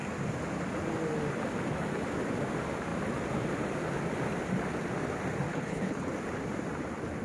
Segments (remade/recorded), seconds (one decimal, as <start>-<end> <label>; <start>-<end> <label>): 0.0-5.5 recorded; 5.5-6.1 remade; 6.1-7.2 recorded